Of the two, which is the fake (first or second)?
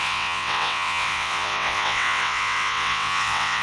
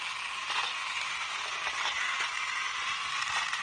first